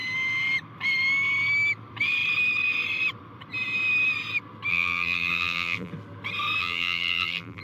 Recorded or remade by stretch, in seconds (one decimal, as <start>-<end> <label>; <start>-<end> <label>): 0.0-4.7 recorded; 4.7-5.9 remade; 5.9-6.6 recorded; 6.6-7.6 remade

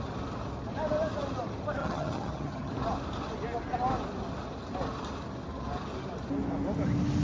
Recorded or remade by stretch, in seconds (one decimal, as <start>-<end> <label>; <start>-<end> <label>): 0.0-1.8 recorded; 1.8-2.7 remade; 2.7-7.2 recorded

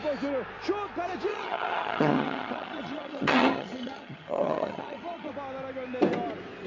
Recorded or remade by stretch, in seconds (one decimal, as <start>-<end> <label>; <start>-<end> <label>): 0.0-1.3 recorded; 1.3-5.3 remade; 5.3-6.7 recorded

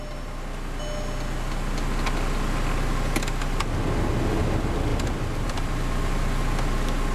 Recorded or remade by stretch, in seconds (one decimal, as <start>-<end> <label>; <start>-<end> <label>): 0.0-4.9 recorded; 4.9-5.7 remade; 5.7-7.1 recorded

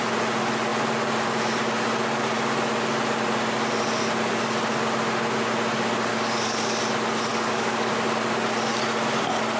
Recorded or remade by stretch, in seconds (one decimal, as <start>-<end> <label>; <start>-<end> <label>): 0.0-6.1 recorded; 6.1-6.8 remade; 6.8-7.3 recorded; 7.3-7.9 remade; 7.9-9.6 recorded

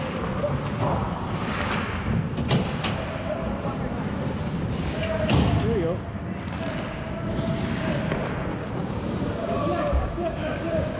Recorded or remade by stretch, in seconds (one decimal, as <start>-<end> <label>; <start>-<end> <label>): 0.0-8.5 recorded; 8.5-11.0 remade